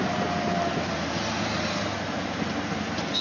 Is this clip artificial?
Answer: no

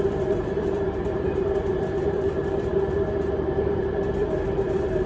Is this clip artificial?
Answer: yes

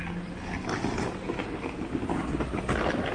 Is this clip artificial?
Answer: no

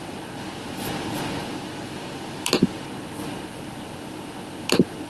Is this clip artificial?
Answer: no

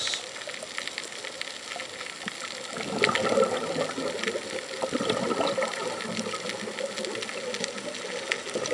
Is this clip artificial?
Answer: no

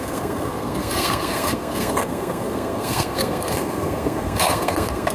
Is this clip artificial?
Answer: yes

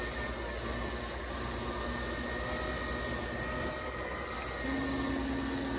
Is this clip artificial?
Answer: no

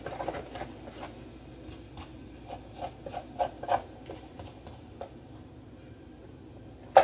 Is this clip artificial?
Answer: no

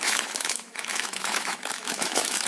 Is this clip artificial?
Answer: yes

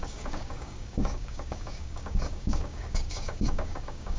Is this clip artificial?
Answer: yes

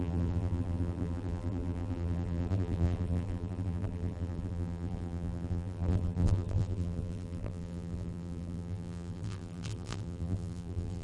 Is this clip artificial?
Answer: yes